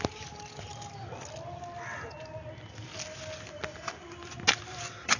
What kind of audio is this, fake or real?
real